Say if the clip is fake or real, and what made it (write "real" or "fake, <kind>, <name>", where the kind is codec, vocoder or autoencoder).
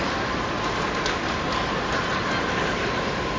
real